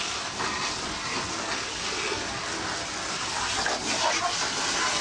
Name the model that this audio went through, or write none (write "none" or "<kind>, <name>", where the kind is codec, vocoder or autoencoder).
none